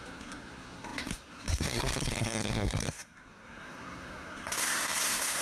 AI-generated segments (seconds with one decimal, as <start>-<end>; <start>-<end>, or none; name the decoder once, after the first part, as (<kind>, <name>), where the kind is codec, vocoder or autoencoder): 0.0-5.4 (codec, SNAC)